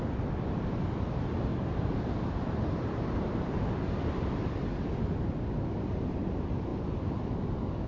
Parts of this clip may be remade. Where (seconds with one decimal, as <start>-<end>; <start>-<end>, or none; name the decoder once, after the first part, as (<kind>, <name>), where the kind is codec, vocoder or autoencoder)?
1.5-5.0 (vocoder, BigVGAN v2)